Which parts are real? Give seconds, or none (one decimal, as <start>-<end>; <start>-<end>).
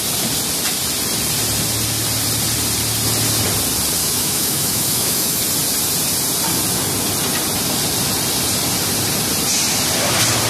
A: 0.0-4.0; 5.4-10.5